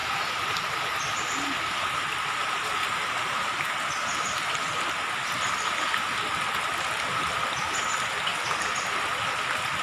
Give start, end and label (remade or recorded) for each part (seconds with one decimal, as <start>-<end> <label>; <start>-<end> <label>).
0.0-9.8 recorded